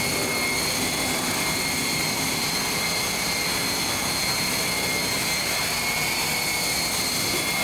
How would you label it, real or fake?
real